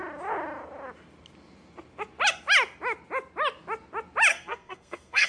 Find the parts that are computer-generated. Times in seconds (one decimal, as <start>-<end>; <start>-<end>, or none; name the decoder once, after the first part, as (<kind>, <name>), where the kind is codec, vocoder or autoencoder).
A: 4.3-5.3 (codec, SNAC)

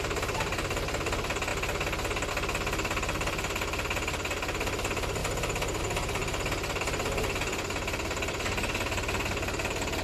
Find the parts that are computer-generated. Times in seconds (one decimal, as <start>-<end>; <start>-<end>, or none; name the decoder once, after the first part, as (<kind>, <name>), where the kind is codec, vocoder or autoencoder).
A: 0.0-1.5 (vocoder, BigVGAN v2); 2.3-5.2; 5.8-6.2; 6.8-10.0

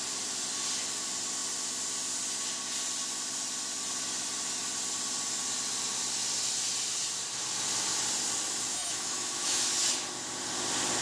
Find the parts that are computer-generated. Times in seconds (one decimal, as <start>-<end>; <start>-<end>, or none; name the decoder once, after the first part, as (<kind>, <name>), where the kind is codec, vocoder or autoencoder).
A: 8.7-9.6 (autoencoder, DAC-VAE)

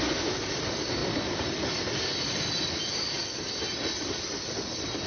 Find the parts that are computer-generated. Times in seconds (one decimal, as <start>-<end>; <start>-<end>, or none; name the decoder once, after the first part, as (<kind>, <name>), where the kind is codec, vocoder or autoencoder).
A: none